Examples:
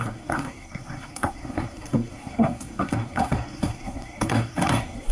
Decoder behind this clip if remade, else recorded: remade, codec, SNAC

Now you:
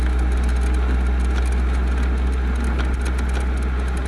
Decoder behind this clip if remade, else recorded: recorded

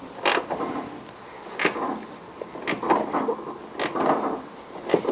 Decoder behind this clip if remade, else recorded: recorded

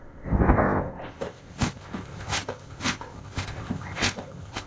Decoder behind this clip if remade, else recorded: remade, codec, ZipCodec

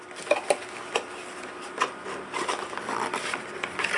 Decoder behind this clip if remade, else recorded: recorded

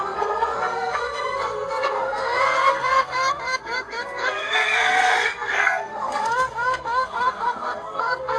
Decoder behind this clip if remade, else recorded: remade, codec, SNAC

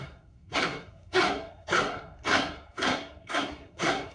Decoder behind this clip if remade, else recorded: remade, codec, SNAC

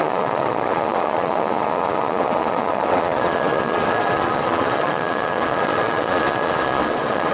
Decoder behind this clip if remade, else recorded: remade, vocoder, Vocos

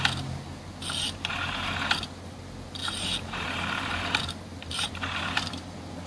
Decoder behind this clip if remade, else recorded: remade, vocoder, BigVGAN v2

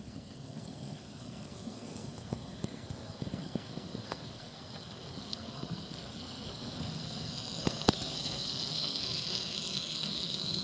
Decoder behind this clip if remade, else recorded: remade, codec, SNAC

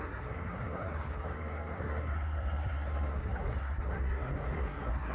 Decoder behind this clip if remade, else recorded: remade, codec, SNAC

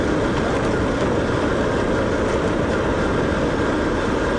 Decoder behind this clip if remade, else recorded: recorded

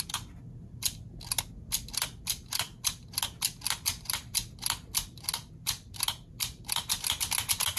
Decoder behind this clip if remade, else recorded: recorded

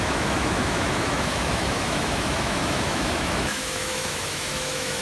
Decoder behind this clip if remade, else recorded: remade, autoencoder, DAC-VAE